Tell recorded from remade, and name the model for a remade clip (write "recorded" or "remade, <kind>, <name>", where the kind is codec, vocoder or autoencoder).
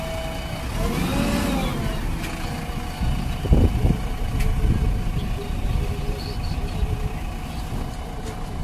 recorded